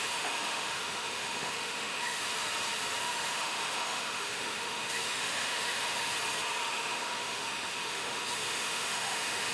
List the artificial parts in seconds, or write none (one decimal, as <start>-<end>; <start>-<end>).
0.0-2.3; 3.0-6.1; 6.6-9.5